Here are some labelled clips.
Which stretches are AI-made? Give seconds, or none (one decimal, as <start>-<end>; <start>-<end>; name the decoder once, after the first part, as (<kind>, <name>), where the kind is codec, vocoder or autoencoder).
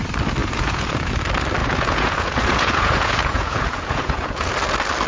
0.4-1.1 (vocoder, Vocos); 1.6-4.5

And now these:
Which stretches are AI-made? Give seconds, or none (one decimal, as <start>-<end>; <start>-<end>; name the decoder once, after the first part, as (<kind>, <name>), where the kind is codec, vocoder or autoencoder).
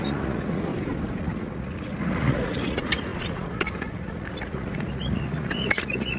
0.0-0.7 (vocoder, Vocos); 1.2-6.2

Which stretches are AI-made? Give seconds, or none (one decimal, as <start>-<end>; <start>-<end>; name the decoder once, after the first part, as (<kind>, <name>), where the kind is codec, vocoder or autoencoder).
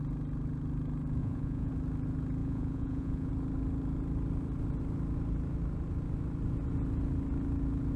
1.2-1.7 (vocoder, Vocos); 2.4-3.3